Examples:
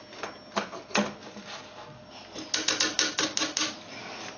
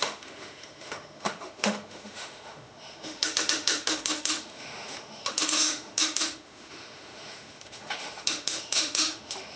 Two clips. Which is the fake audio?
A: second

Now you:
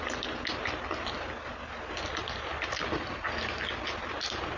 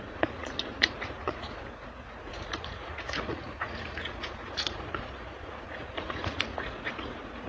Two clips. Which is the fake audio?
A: second